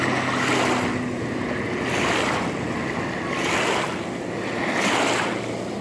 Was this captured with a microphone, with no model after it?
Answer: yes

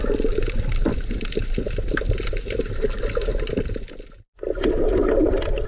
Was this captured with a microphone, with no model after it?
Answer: yes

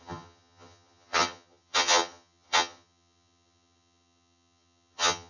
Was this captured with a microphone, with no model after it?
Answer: no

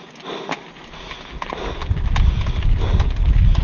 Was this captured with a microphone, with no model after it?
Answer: yes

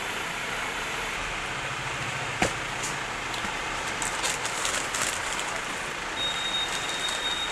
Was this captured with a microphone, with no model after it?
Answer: yes